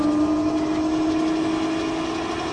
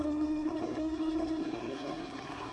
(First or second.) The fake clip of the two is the second